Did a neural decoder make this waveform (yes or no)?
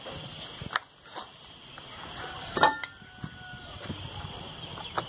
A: no